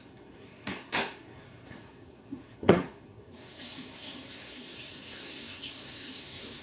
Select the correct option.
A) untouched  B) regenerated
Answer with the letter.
B